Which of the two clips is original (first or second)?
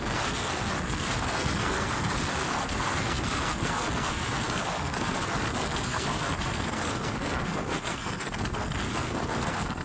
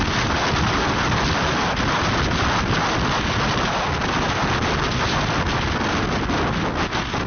second